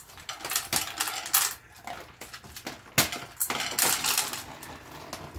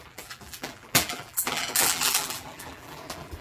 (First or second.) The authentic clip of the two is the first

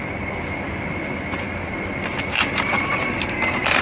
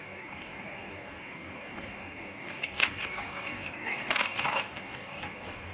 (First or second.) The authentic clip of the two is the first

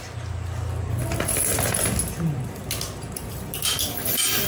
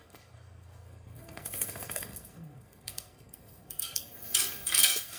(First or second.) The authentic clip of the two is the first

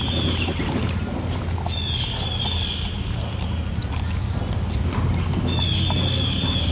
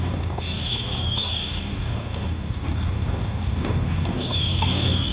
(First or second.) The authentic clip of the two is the first